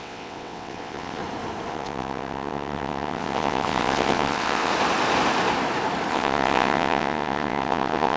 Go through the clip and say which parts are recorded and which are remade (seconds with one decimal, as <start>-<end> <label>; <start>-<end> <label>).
0.0-1.2 remade; 1.2-1.7 recorded; 1.7-4.7 remade; 4.7-6.1 recorded; 6.1-8.2 remade